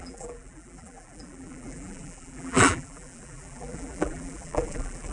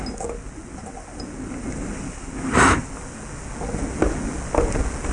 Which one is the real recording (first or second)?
second